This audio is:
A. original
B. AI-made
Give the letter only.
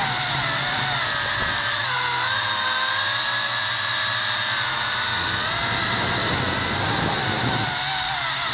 A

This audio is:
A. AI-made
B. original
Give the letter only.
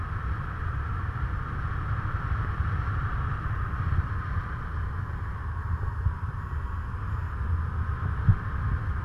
B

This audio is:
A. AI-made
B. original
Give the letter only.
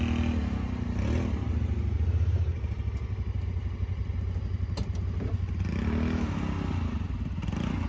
B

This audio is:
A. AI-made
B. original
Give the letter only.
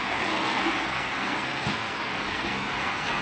A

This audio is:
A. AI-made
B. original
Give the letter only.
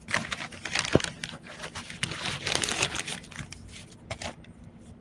B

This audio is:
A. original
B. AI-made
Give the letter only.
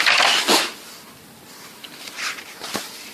A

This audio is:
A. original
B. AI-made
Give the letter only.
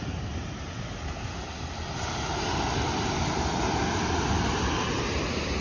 A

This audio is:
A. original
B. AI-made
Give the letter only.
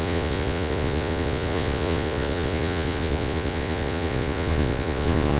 B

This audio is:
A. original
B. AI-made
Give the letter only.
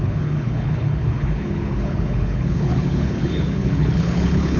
B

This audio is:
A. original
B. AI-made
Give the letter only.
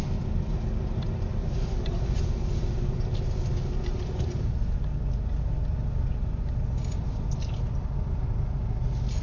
A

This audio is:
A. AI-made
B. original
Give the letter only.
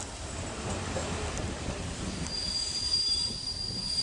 A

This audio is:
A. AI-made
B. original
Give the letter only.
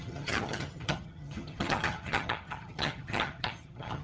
A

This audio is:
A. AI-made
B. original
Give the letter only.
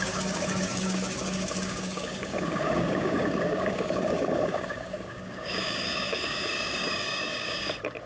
A